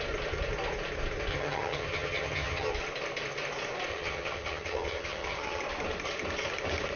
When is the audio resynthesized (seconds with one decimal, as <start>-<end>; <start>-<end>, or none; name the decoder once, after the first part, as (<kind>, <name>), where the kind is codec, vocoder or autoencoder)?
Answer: 1.3-2.7 (vocoder, HiFi-GAN); 3.9-5.6